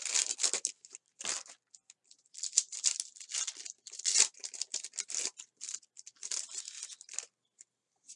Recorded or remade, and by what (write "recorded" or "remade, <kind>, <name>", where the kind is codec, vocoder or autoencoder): recorded